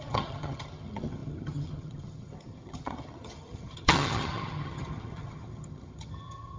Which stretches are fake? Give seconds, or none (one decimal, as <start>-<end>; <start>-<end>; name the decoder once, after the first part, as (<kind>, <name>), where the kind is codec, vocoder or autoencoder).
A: 0.0-6.6 (vocoder, HiFi-GAN)